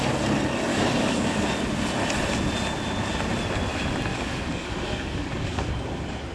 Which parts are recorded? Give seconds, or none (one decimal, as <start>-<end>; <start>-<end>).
0.0-0.7; 1.4-4.1; 5.7-6.3